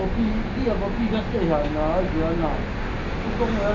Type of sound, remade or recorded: recorded